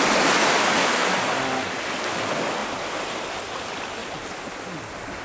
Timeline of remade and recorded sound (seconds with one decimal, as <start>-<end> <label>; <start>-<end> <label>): 0.0-4.0 recorded; 4.0-4.6 remade; 4.6-5.2 recorded